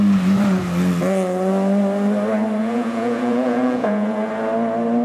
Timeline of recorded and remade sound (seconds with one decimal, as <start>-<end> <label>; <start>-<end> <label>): 0.0-2.6 recorded; 2.6-4.3 remade; 4.3-5.0 recorded